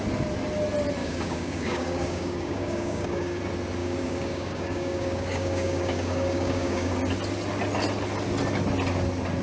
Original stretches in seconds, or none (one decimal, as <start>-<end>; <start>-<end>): 0.0-1.0; 3.4-3.8; 6.9-9.4